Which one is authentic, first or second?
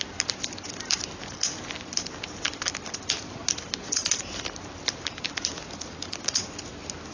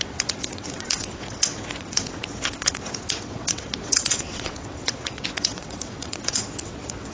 first